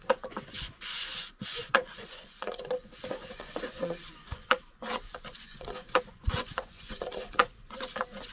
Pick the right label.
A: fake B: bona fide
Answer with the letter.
A